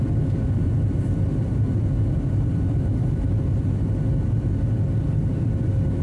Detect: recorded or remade recorded